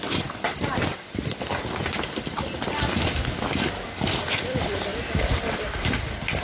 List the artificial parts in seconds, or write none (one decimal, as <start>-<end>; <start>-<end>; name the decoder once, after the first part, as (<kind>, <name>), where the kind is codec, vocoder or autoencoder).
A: none